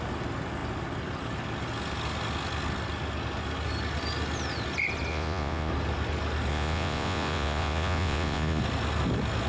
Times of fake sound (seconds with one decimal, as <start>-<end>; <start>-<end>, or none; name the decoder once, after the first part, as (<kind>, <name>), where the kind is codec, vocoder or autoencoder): 5.1-5.7 (vocoder, Vocos); 6.5-8.6